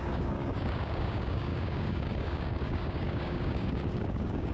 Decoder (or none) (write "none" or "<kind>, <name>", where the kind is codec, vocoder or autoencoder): codec, DAC